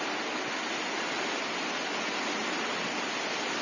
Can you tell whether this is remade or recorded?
recorded